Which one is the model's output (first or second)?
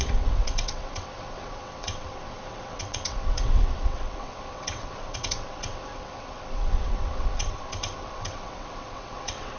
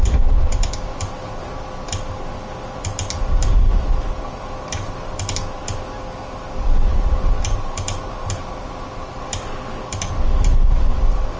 first